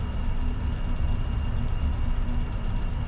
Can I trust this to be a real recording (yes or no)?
yes